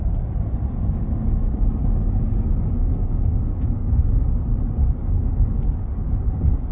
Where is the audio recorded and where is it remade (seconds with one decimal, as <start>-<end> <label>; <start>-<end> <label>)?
0.0-1.8 recorded; 1.8-4.2 remade; 4.2-5.0 recorded; 5.0-5.6 remade; 5.6-6.7 recorded